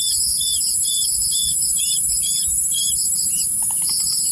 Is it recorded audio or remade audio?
remade